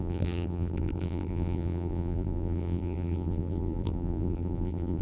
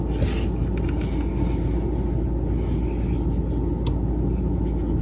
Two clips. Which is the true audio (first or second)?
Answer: second